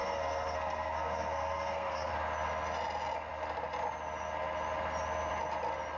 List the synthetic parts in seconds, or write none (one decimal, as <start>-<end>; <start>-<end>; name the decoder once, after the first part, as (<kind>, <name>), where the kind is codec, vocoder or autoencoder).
0.0-2.1 (codec, SNAC)